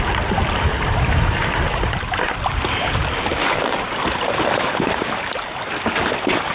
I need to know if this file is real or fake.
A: real